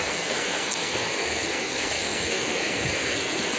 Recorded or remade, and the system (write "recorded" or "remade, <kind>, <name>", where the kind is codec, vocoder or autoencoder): remade, codec, SNAC